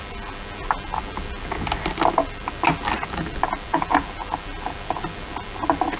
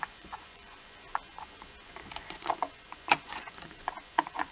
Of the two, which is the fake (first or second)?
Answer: second